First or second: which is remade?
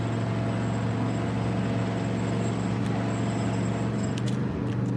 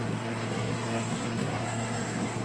second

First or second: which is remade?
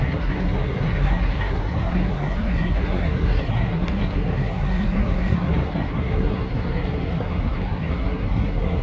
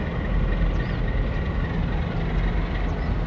first